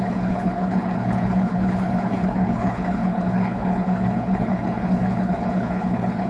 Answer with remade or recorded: remade